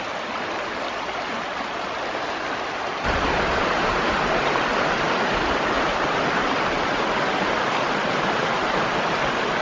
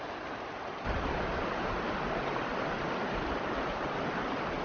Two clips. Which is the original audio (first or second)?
first